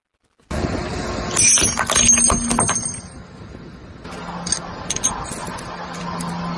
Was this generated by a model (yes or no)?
no